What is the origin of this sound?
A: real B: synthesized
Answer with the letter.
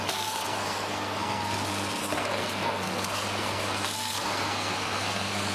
B